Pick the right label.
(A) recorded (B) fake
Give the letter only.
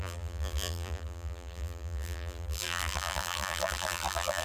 B